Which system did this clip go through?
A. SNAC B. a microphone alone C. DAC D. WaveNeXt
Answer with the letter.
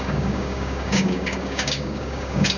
C